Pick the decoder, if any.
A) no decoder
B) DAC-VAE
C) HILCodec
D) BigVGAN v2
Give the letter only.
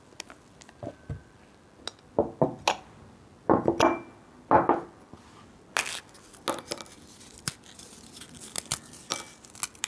A